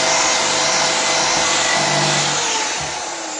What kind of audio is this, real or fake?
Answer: real